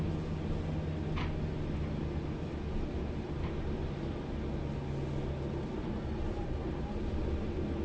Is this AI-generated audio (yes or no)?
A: no